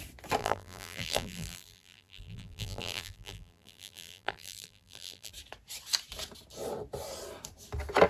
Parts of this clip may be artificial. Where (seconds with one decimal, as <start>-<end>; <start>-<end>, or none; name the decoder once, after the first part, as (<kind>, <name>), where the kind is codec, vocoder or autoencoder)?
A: 0.4-5.3 (vocoder, BigVGAN v2)

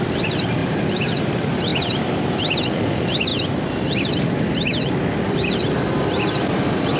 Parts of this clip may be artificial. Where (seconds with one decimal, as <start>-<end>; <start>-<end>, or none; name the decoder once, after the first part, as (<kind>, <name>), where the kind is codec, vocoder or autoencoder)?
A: 0.0-1.7 (vocoder, BigVGAN v2); 2.6-7.0

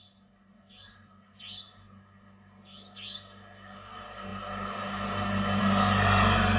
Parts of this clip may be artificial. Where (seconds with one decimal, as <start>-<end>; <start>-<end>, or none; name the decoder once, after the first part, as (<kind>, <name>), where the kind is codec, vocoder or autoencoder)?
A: none